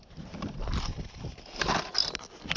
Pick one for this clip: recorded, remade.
recorded